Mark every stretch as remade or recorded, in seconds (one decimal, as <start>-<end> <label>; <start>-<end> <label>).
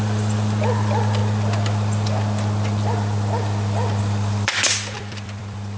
0.0-1.2 remade; 1.2-4.0 recorded; 4.0-5.8 remade